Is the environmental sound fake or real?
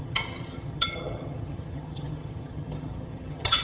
fake